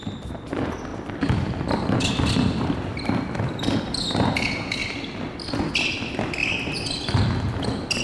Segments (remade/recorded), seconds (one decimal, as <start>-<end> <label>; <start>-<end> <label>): 0.0-8.0 recorded